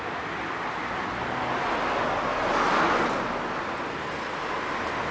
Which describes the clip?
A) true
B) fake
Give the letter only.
A